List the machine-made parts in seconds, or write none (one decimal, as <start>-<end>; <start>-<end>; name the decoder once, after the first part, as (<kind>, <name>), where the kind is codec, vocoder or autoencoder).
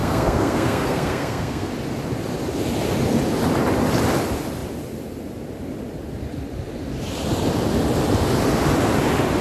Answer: 0.0-1.7 (codec, SNAC)